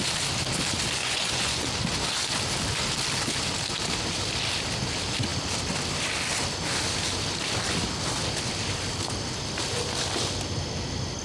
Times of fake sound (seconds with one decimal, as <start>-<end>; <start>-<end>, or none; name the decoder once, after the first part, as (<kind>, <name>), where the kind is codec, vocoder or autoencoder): 1.0-1.6 (vocoder, Vocos)